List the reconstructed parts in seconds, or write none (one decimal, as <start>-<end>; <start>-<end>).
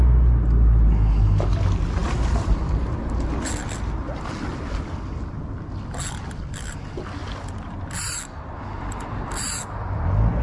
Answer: 2.0-3.4; 4.0-4.6